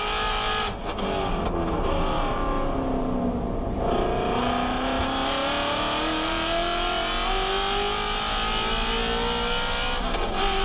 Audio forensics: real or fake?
real